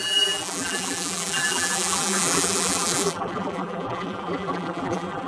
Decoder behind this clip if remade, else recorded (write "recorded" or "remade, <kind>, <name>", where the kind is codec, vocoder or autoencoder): remade, vocoder, BigVGAN v2